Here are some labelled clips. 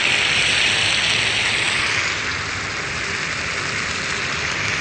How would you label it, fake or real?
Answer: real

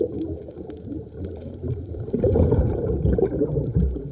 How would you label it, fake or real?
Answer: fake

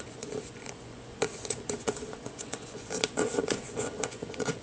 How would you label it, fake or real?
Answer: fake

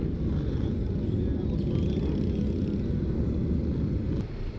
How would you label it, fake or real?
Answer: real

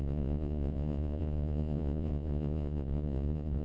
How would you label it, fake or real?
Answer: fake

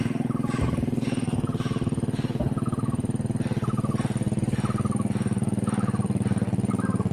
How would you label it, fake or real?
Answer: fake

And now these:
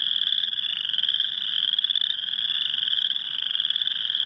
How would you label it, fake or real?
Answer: real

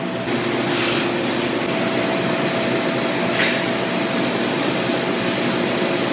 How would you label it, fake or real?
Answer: real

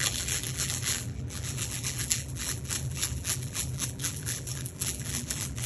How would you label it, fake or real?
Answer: fake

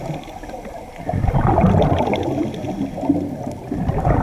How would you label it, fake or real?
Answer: real